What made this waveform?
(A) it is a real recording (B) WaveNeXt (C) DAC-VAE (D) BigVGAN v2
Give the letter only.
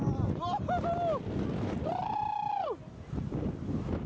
A